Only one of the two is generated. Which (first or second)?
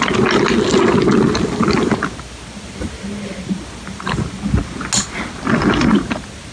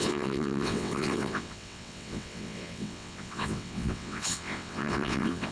second